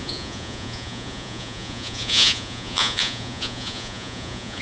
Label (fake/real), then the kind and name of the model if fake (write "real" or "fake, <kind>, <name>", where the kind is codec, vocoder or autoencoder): fake, vocoder, Vocos